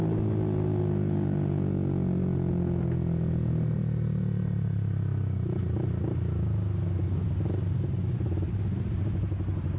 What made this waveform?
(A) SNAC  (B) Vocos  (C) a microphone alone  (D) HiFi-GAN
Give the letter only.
C